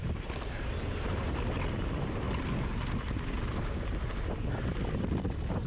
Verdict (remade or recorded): recorded